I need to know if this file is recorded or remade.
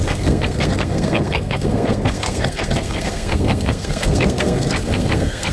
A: remade